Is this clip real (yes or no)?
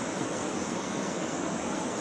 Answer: no